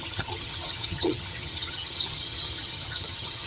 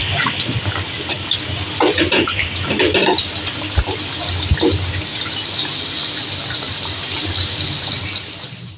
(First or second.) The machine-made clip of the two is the first